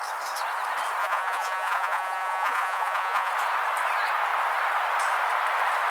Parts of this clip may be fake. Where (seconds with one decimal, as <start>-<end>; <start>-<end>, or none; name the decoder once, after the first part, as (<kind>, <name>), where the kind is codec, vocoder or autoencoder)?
1.0-3.3 (vocoder, Vocos)

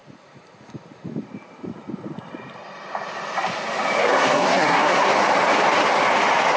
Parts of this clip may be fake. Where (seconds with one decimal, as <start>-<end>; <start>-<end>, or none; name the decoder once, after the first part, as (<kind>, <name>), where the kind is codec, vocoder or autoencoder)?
4.0-5.1 (codec, SNAC)

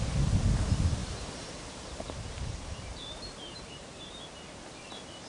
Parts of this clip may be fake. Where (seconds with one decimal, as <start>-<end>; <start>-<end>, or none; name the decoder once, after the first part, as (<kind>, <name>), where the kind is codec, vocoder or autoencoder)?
1.0-4.2 (vocoder, BigVGAN v2)

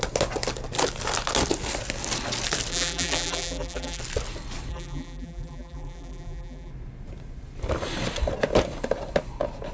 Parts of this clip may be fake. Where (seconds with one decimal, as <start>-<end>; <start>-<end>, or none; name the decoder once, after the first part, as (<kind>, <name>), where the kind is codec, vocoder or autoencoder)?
2.7-4.0 (vocoder, BigVGAN v2); 4.7-6.7